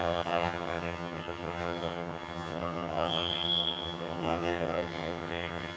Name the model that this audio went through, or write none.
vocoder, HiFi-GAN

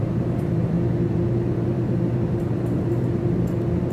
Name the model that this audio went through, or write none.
vocoder, BigVGAN v2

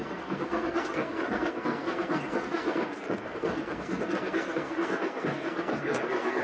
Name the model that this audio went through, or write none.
codec, SNAC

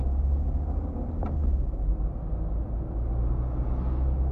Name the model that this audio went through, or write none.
none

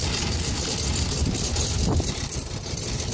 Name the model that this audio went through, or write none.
vocoder, BigVGAN v2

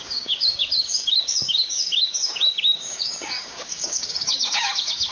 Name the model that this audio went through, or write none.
codec, DAC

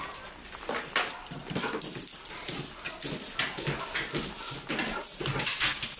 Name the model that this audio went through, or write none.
none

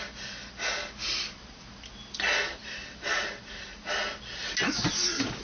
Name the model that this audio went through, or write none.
none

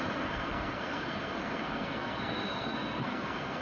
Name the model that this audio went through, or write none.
codec, SNAC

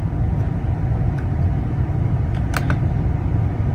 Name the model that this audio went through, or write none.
none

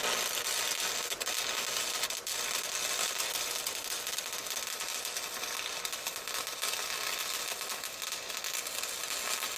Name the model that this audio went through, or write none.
none